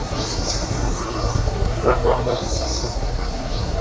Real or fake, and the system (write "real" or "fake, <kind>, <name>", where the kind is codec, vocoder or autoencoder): fake, codec, SNAC